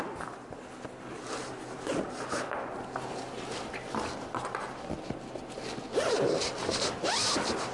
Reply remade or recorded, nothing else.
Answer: recorded